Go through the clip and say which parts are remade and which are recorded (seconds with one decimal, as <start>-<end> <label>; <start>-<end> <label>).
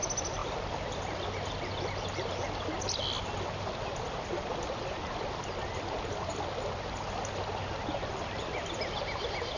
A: 0.0-9.6 recorded